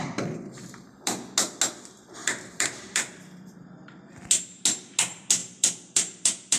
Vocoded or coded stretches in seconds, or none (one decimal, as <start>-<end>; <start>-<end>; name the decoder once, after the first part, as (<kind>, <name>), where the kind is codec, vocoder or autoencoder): 0.0-0.9 (vocoder, BigVGAN v2); 2.2-4.2; 5.4-6.6